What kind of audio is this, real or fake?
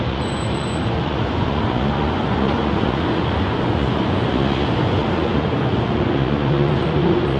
fake